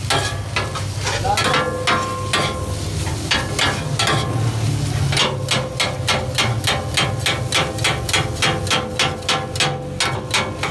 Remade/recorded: recorded